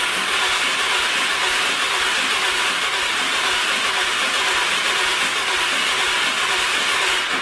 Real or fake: real